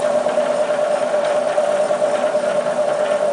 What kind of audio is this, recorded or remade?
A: recorded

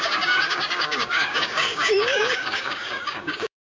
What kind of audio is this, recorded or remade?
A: remade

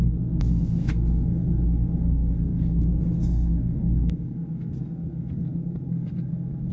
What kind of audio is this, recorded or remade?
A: remade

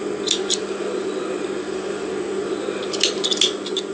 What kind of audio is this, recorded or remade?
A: recorded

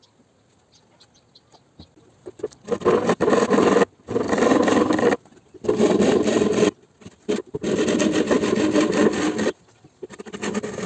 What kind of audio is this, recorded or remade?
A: recorded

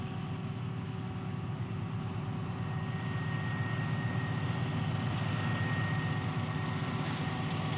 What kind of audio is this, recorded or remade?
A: recorded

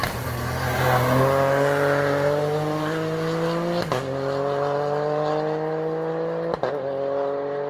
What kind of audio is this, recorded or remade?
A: recorded